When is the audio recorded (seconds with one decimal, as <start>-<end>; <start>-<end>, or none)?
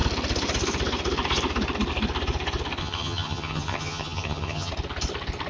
0.0-2.8; 4.7-5.5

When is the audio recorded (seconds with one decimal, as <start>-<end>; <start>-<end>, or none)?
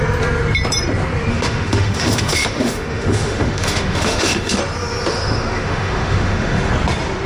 0.0-1.3; 4.6-5.1; 6.7-7.3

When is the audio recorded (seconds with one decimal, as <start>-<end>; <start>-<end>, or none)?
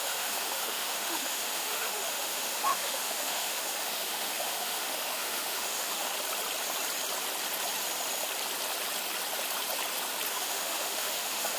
6.1-10.3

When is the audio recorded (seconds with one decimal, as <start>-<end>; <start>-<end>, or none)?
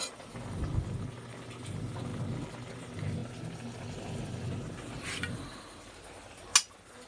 0.0-7.1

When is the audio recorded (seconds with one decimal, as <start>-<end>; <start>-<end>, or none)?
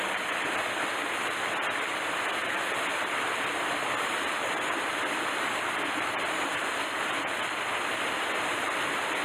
0.0-9.2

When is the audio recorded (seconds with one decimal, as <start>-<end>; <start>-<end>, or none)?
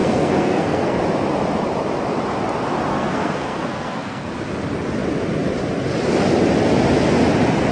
1.0-2.9; 4.3-7.7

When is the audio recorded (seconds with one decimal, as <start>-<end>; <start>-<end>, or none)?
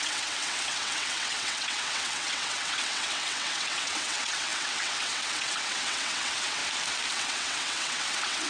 6.6-7.1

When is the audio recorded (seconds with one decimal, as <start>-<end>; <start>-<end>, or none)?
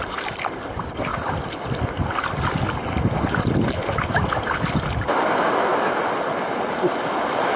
0.0-1.1; 1.7-7.6